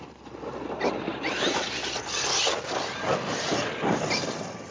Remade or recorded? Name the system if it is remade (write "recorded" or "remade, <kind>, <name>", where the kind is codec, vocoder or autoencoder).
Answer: recorded